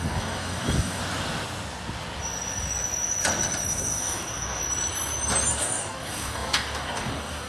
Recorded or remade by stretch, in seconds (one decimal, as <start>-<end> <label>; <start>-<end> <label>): 0.0-1.0 remade; 1.0-3.7 recorded; 3.7-4.6 remade; 4.6-5.5 recorded; 5.5-7.5 remade